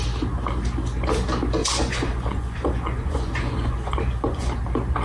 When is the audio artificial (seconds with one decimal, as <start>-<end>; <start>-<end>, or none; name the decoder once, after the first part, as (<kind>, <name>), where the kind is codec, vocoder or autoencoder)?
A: 1.6-4.6 (vocoder, Vocos)